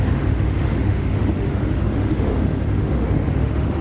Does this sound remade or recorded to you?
remade